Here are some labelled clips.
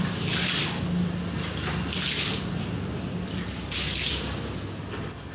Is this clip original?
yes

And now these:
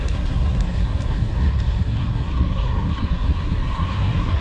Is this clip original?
no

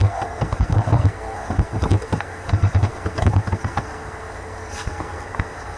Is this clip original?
no